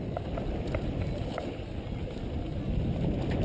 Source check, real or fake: real